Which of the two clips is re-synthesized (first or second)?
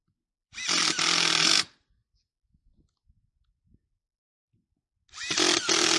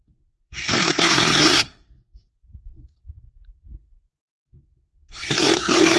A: second